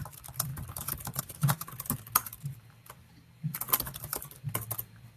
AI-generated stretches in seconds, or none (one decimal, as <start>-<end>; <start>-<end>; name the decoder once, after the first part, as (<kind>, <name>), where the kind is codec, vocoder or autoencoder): 0.5-1.2 (vocoder, BigVGAN v2)